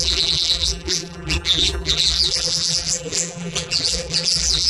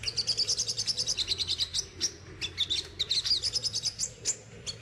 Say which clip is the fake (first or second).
first